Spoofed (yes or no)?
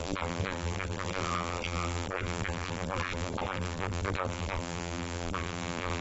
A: yes